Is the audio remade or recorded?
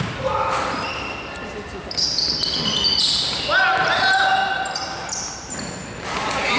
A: recorded